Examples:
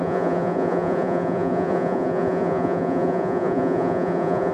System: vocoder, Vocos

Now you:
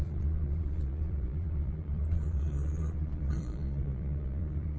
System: vocoder, Vocos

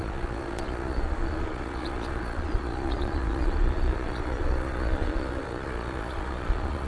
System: vocoder, Vocos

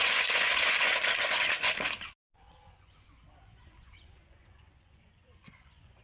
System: vocoder, Vocos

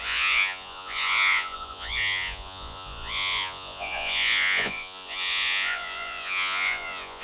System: vocoder, Vocos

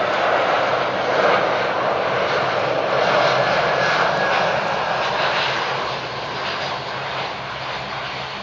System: none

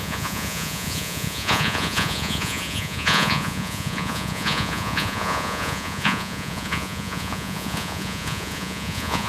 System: vocoder, Vocos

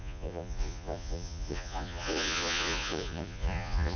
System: vocoder, Vocos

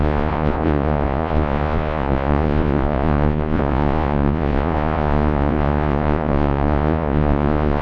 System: vocoder, Vocos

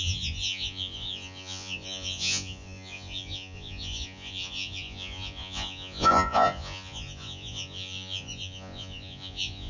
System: vocoder, Vocos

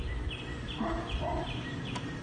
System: none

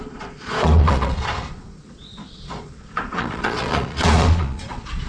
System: vocoder, Vocos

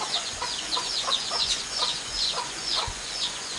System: vocoder, Vocos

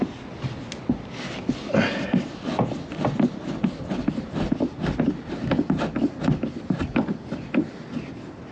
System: none